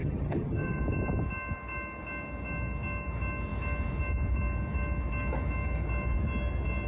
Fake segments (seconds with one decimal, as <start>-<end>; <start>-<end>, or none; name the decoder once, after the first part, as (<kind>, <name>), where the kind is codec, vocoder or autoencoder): 0.0-0.8 (vocoder, HiFi-GAN)